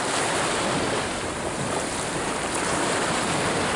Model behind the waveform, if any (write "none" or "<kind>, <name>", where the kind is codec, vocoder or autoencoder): none